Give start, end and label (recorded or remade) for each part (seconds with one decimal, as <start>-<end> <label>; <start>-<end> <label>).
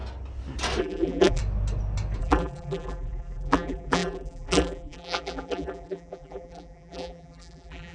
0.0-0.8 recorded; 0.8-1.4 remade; 1.4-2.2 recorded; 2.2-7.9 remade